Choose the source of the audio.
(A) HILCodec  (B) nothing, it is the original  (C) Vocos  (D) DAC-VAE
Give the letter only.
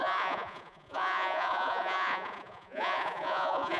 C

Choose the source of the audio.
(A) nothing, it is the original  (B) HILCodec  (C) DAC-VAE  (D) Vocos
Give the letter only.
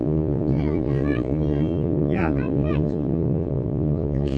D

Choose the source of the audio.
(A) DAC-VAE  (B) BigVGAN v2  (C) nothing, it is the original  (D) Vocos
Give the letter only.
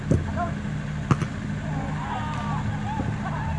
C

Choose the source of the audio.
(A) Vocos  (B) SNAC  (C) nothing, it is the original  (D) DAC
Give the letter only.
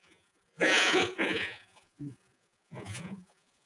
A